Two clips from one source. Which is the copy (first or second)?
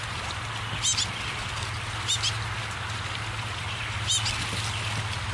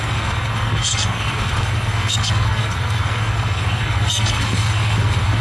second